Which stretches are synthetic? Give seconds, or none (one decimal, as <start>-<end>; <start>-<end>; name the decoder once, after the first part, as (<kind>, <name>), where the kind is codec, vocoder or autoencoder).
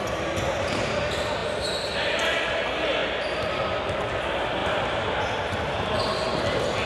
3.0-4.1 (vocoder, BigVGAN v2); 4.6-6.0